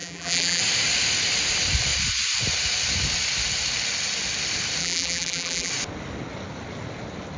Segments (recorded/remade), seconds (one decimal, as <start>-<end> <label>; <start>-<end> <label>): 0.0-0.6 remade; 0.6-4.8 recorded; 4.8-5.7 remade; 5.7-7.4 recorded

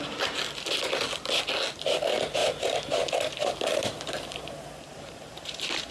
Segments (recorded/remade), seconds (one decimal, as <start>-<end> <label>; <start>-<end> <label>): 0.0-2.4 recorded; 2.4-5.9 remade

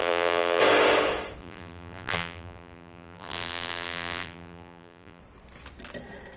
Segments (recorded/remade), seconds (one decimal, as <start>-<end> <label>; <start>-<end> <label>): 0.0-0.6 remade; 0.6-1.4 recorded; 1.4-5.2 remade; 5.2-6.4 recorded

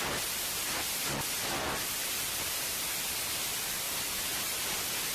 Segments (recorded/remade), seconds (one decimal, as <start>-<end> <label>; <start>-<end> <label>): 0.0-2.0 recorded; 2.0-5.1 remade

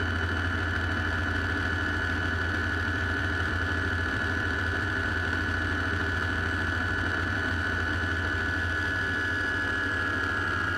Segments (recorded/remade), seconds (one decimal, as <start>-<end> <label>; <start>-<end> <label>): 0.0-2.6 recorded; 2.6-5.1 remade; 5.1-10.8 recorded